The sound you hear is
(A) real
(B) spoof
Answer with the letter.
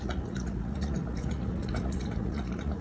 B